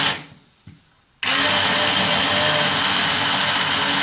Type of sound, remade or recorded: recorded